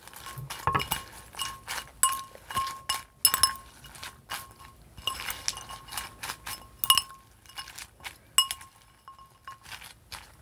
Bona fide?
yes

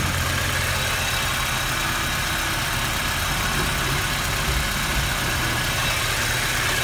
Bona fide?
yes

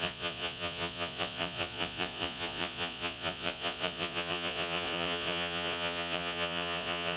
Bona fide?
no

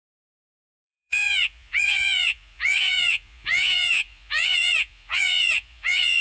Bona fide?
no